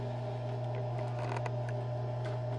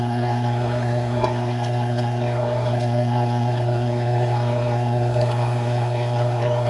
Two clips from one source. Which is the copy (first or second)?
second